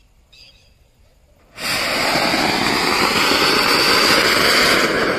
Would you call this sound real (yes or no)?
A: yes